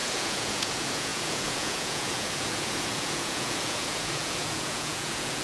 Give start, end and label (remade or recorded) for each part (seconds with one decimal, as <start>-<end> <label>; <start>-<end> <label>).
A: 0.0-5.4 remade